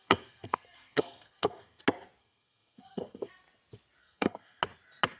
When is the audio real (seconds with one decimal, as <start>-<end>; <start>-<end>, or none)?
1.8-2.2; 3.3-4.0; 4.6-5.2